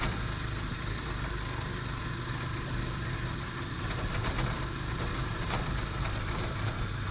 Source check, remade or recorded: remade